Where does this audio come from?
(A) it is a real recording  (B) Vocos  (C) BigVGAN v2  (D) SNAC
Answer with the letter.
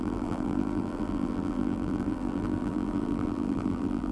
C